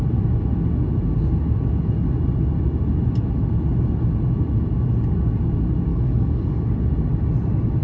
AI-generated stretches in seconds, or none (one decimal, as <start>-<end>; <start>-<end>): 5.9-6.6